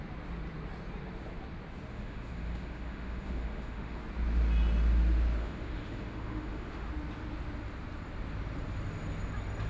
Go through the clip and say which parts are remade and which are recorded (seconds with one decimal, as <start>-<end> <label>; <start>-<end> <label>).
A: 0.0-1.9 recorded; 1.9-4.0 remade; 4.0-5.4 recorded; 5.4-6.9 remade; 6.9-9.7 recorded